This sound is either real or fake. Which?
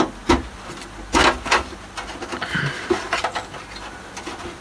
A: real